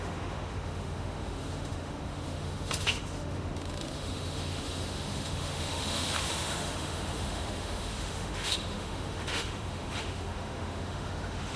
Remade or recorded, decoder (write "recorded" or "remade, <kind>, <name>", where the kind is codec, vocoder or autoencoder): remade, autoencoder, DAC-VAE